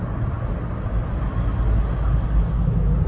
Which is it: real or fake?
real